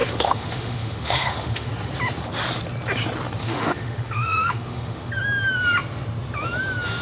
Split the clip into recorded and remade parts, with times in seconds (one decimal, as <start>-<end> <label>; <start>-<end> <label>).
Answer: 0.0-1.7 remade; 1.7-3.4 recorded; 3.4-5.1 remade; 5.1-7.0 recorded